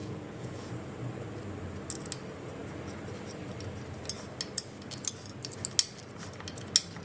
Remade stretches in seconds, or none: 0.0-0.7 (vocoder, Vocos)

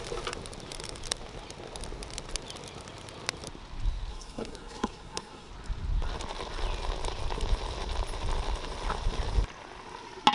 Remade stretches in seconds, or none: 4.1-5.5 (codec, SNAC)

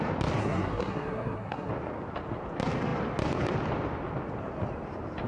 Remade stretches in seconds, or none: 0.4-1.7 (codec, SNAC)